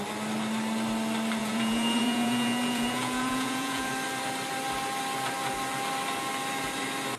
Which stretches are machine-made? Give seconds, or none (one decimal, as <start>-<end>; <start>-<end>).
1.4-3.9